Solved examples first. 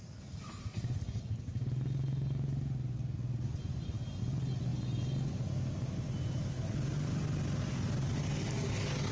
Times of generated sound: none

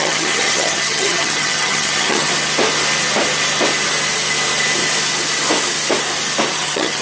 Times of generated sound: 0.0-2.3; 6.5-7.0

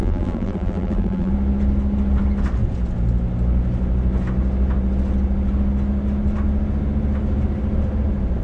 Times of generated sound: 0.0-1.3

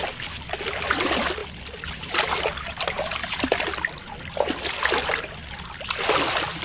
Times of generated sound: none

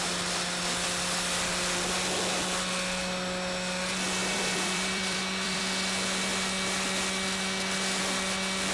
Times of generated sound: 4.2-5.6

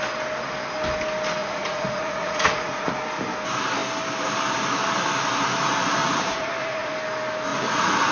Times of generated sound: 1.4-2.9; 6.0-6.9; 7.5-8.1